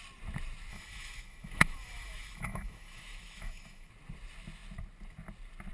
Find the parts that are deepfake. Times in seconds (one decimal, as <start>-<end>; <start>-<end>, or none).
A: 0.7-3.9